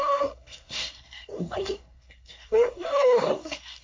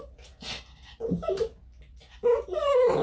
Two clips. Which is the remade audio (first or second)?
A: first